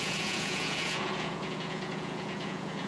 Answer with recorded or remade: remade